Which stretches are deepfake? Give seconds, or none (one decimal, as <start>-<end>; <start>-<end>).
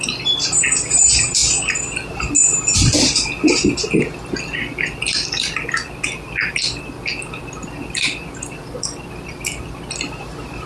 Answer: none